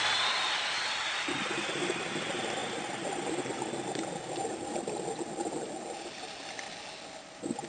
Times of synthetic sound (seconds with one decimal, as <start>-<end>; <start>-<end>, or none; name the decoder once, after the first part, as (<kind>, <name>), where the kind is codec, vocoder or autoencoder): none